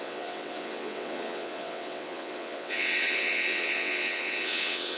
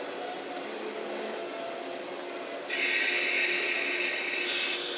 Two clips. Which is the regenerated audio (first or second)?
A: first